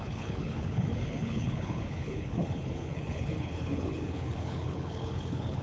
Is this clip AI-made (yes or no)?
yes